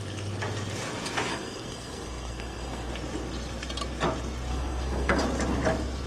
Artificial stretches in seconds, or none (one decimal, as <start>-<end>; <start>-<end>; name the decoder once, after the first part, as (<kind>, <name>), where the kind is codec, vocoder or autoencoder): 1.3-2.9 (codec, SNAC); 4.5-5.2